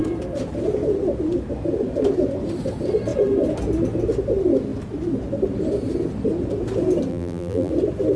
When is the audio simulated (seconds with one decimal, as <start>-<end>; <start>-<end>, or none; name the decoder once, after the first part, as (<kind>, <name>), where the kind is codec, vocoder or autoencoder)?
7.1-7.7 (vocoder, BigVGAN v2)